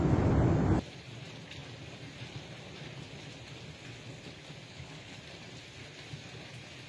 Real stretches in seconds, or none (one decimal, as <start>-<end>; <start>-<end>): 0.0-4.7; 5.2-6.9